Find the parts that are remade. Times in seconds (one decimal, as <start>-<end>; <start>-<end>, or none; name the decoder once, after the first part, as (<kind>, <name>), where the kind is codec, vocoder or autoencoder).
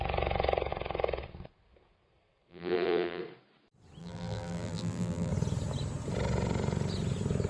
2.5-3.2 (vocoder, BigVGAN v2); 4.0-5.3